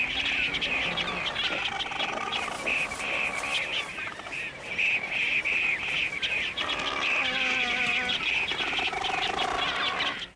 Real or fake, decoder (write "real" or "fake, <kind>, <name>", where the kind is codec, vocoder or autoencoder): real